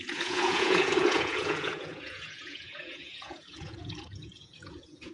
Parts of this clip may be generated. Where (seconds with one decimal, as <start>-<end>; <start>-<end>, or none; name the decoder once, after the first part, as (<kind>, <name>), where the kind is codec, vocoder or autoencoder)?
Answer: 0.0-5.1 (vocoder, Vocos)

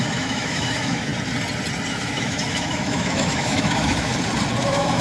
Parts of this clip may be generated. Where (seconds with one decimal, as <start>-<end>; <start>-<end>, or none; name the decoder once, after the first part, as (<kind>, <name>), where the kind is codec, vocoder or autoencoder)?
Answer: 0.0-1.1 (autoencoder, DAC-VAE); 1.9-4.1; 4.6-5.0

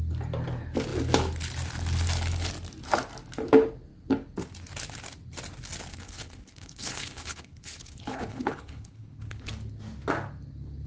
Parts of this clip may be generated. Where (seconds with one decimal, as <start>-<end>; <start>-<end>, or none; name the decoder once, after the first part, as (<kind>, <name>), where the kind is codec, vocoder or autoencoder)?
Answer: 5.9-9.5 (codec, HILCodec)

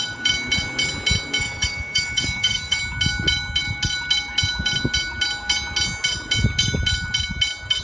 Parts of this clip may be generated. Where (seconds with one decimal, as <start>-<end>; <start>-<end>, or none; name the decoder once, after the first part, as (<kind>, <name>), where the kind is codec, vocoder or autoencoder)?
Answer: 1.4-2.8 (codec, DAC)

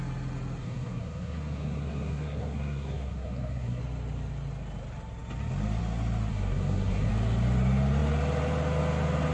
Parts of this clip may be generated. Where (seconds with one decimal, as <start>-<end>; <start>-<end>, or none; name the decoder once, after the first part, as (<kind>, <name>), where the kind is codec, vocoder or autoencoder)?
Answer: 0.6-3.8 (codec, SNAC); 6.3-7.1

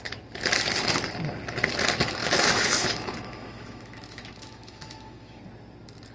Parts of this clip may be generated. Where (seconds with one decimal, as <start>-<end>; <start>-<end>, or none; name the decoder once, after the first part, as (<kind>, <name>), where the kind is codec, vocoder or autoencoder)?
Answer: 2.2-5.4 (autoencoder, DAC-VAE)